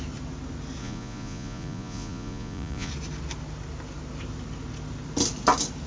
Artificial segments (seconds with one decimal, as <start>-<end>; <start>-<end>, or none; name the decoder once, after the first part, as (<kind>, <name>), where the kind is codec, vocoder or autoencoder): 0.8-2.9 (vocoder, Vocos)